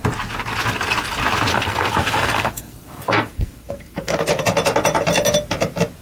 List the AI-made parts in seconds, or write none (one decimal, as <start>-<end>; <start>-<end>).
1.5-4.4